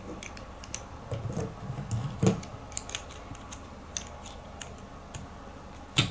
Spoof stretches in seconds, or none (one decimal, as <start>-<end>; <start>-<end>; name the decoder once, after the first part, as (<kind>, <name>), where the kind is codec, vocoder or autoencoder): none